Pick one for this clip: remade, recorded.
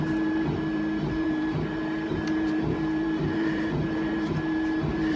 remade